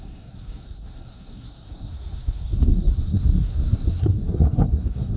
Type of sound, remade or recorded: remade